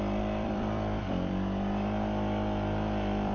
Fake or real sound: fake